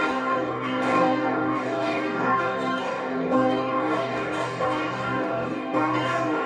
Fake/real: fake